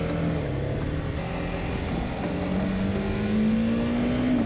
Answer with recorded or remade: recorded